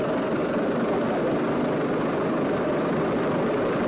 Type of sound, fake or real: real